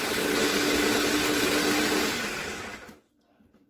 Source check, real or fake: real